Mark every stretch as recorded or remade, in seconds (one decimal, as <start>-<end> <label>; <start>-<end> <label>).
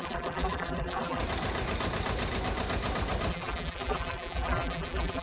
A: 0.0-1.2 remade; 1.2-3.3 recorded; 3.3-5.2 remade